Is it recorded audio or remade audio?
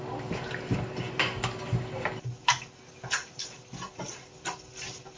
recorded